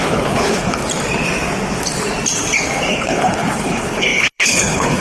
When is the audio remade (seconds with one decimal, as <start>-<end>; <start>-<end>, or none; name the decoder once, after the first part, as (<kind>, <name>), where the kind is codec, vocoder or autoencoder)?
0.0-0.8 (codec, HILCodec); 2.9-5.0